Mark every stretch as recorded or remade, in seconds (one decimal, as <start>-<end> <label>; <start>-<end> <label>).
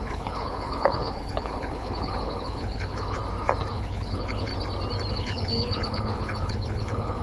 0.0-3.2 remade; 3.2-3.7 recorded; 3.7-4.5 remade; 4.5-5.1 recorded; 5.1-7.2 remade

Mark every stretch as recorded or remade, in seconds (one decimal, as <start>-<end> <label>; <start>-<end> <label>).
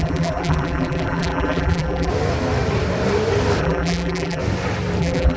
0.0-2.1 remade; 2.1-3.6 recorded; 3.6-4.4 remade; 4.4-5.0 recorded; 5.0-5.4 remade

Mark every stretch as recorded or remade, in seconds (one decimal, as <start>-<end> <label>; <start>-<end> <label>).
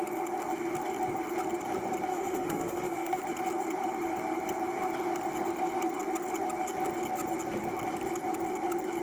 0.0-2.1 recorded; 2.1-3.2 remade; 3.2-9.0 recorded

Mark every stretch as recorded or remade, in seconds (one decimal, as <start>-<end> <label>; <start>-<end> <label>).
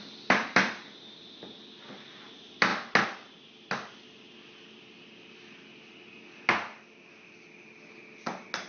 0.0-8.7 recorded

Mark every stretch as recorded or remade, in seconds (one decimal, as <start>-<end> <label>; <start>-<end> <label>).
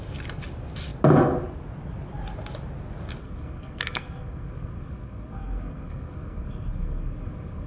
0.0-3.2 recorded; 3.2-7.7 remade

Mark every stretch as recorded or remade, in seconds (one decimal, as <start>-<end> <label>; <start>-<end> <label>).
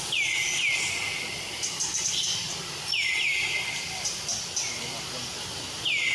0.0-6.1 recorded